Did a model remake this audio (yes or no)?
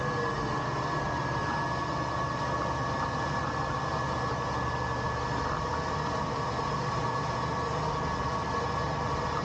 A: no